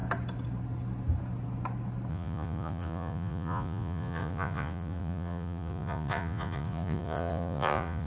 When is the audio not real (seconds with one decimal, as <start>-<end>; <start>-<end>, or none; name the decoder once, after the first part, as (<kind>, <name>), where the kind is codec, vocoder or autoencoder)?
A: 2.1-8.1 (vocoder, Vocos)